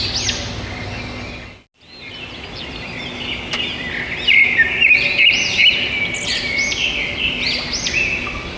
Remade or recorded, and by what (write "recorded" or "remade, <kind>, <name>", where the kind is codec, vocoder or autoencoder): recorded